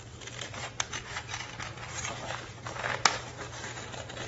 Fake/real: real